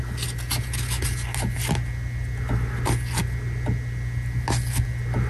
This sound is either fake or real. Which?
real